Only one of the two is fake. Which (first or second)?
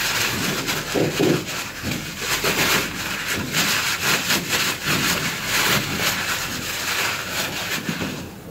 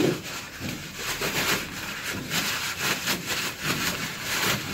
second